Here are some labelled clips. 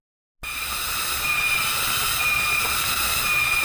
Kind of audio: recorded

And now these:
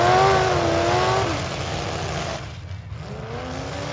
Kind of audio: recorded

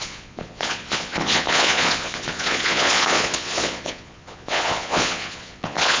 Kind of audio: remade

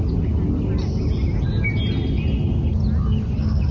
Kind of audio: recorded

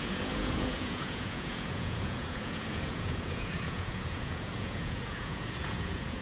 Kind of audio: remade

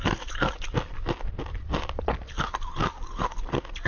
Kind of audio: recorded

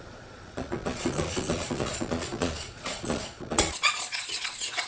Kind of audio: remade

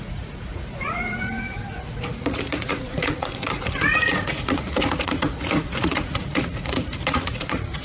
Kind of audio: remade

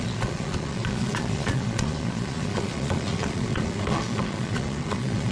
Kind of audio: remade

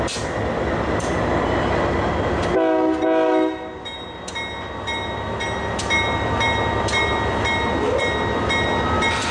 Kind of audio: recorded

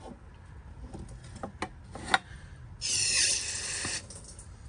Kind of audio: recorded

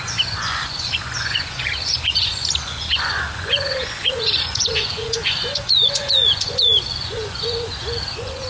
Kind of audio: remade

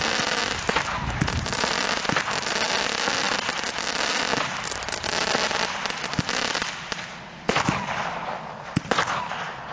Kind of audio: recorded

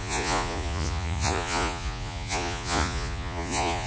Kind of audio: remade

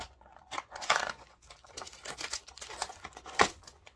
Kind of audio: remade